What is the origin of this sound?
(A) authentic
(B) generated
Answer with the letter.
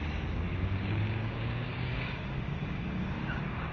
B